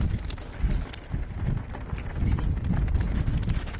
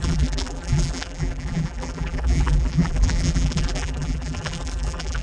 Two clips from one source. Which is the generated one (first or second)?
second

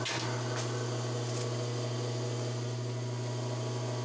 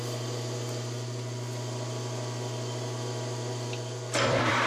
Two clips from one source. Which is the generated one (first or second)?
second